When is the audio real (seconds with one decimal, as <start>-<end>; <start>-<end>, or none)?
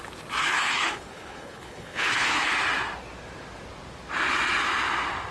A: 0.0-0.4; 2.5-5.3